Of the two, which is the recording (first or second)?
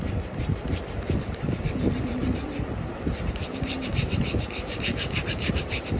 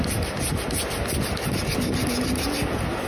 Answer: second